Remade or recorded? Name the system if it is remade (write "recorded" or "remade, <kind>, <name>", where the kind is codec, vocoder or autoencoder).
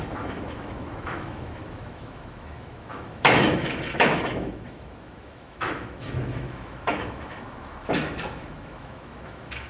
remade, autoencoder, DAC-VAE